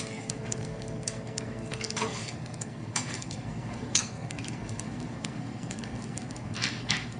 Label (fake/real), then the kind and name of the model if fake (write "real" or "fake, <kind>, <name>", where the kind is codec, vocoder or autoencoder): fake, codec, SNAC